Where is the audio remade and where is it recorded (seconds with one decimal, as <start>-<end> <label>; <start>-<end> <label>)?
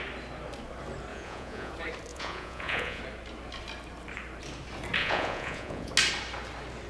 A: 0.0-1.1 recorded; 1.1-1.7 remade; 1.7-2.1 recorded; 2.1-3.0 remade; 3.0-5.0 recorded; 5.0-5.9 remade; 5.9-6.9 recorded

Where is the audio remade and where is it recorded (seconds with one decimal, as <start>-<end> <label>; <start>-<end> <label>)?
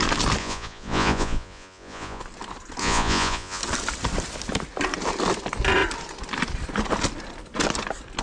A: 0.0-0.4 recorded; 0.4-2.2 remade; 2.2-2.8 recorded; 2.8-3.6 remade; 3.6-8.2 recorded